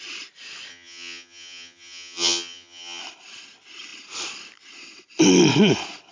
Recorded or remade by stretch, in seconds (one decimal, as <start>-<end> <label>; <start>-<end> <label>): 0.0-0.7 recorded; 0.7-3.0 remade; 3.0-6.1 recorded